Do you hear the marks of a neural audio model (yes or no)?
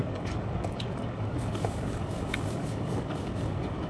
yes